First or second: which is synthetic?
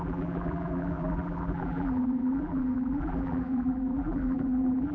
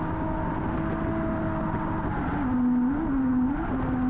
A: first